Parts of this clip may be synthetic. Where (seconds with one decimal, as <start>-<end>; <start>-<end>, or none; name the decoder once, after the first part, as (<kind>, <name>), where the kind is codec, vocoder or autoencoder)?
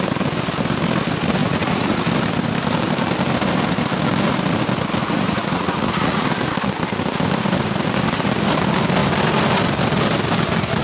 1.4-2.1 (vocoder, Vocos); 5.0-6.2